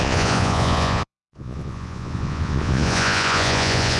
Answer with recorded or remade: remade